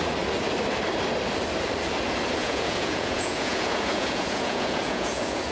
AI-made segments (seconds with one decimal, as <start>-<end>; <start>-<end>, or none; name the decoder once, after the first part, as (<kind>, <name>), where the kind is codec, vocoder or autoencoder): 2.4-5.5 (vocoder, Vocos)